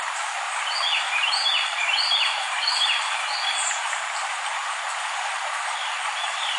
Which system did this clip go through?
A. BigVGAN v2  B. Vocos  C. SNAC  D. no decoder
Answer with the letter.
A